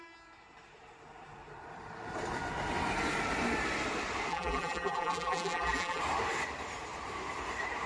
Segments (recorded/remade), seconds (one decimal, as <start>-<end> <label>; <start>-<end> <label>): 0.0-4.3 recorded; 4.3-6.0 remade; 6.0-7.9 recorded